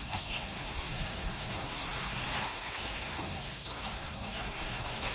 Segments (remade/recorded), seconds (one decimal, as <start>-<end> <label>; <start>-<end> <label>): 0.0-5.1 remade